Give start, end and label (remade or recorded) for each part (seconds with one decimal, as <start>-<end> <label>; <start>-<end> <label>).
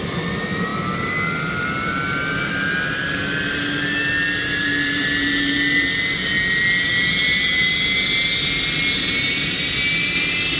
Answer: 0.0-10.6 recorded